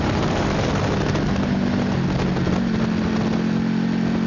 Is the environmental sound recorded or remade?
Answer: recorded